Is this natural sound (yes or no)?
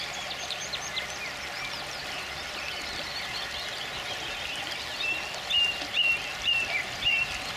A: yes